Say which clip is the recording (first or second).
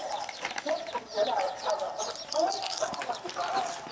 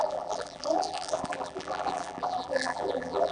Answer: first